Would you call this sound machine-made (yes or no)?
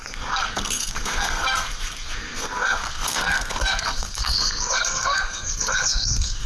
yes